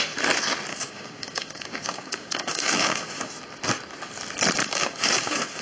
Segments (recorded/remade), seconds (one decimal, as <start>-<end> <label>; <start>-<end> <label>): 0.0-0.7 recorded; 0.7-3.3 remade; 3.3-4.6 recorded; 4.6-5.6 remade